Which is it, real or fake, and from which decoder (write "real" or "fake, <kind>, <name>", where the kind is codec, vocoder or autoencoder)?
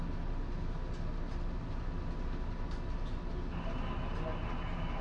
real